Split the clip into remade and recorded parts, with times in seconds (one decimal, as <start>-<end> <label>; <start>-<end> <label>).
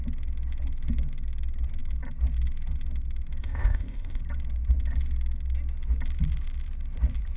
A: 0.0-3.4 recorded; 3.4-4.2 remade; 4.2-7.4 recorded